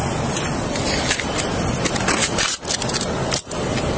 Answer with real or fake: fake